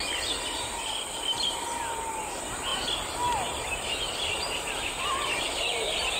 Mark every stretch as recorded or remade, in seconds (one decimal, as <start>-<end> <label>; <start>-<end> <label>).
0.0-6.2 recorded